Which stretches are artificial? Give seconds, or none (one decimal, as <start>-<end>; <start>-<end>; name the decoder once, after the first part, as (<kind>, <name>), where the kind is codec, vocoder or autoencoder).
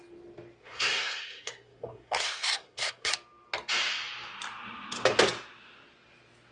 0.6-3.1 (codec, SNAC)